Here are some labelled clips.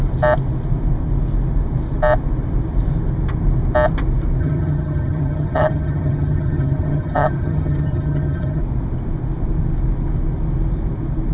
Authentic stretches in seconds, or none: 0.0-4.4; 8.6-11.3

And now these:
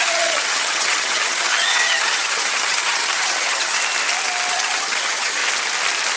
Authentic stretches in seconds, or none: 3.8-4.5; 5.4-6.2

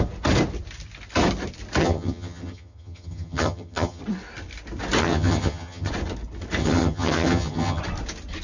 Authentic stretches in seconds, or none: 0.0-1.8; 4.0-5.0; 5.9-6.6; 7.8-8.4

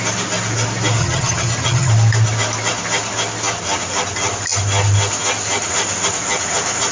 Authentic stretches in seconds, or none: 0.0-1.0; 1.9-6.9

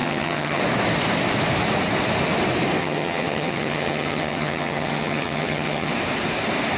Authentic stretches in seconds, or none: 0.6-2.8; 5.9-6.8

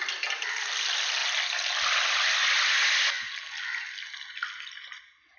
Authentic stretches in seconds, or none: 0.0-5.4

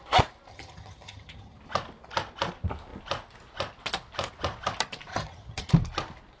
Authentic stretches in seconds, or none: 0.0-0.5; 1.6-5.1; 5.7-6.4